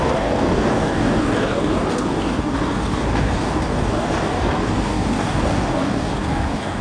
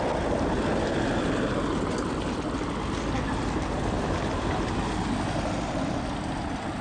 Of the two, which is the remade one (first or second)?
first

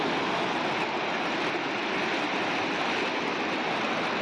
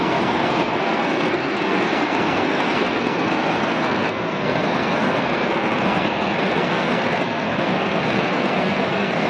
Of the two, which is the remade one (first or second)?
second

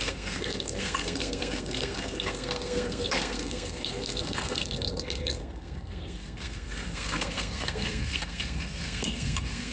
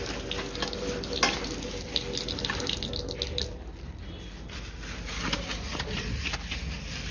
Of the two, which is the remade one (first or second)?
first